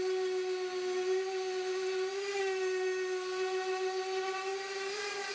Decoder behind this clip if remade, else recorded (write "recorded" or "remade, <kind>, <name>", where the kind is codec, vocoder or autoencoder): recorded